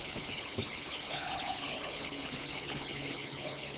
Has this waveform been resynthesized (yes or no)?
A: yes